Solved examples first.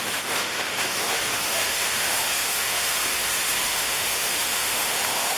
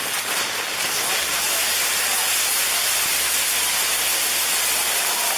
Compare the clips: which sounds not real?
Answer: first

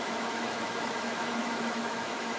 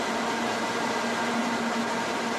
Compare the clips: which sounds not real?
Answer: first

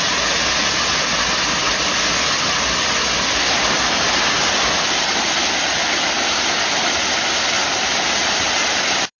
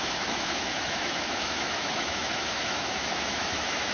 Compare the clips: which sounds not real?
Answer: second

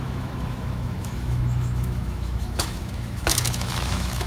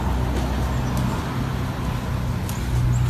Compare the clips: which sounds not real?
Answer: first